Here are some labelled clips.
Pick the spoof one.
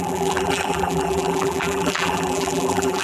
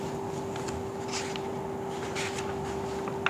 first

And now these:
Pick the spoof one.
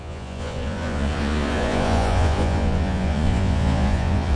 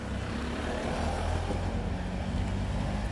first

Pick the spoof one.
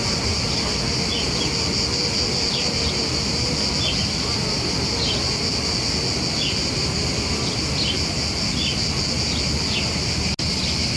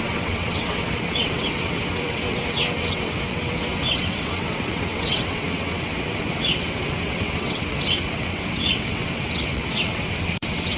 second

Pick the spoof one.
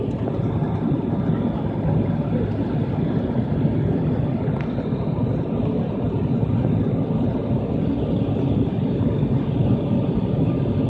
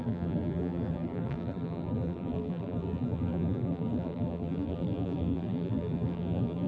second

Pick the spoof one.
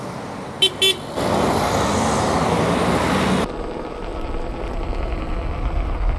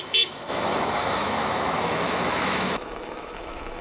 second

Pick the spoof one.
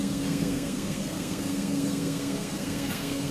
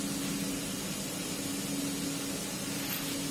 first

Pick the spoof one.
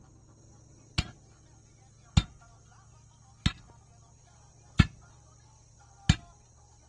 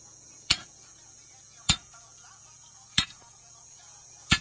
second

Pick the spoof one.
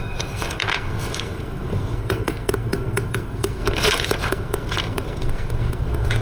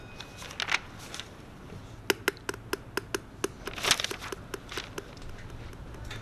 first